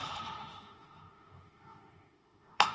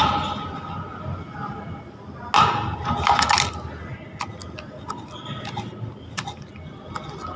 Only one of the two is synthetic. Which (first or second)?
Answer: first